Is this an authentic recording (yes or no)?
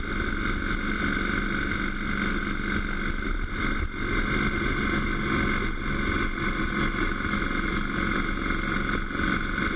yes